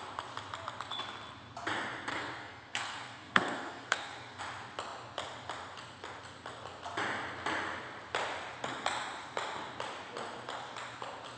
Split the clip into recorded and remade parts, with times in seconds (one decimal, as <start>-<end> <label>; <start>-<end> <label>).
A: 0.0-2.1 recorded; 2.1-4.4 remade; 4.4-11.4 recorded